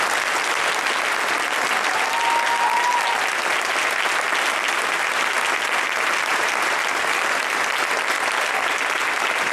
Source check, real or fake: real